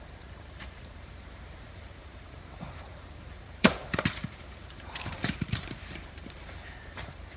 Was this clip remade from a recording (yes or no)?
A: yes